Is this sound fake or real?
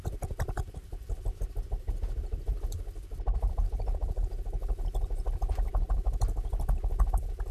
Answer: real